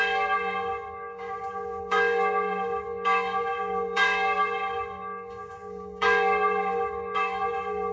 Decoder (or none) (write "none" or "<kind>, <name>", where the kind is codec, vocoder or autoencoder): codec, DAC